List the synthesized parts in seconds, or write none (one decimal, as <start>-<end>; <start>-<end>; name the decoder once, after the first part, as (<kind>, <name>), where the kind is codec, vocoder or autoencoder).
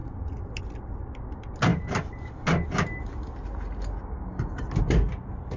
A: none